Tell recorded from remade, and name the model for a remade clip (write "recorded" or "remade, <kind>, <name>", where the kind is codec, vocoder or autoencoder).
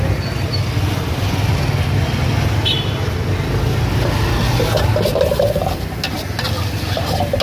recorded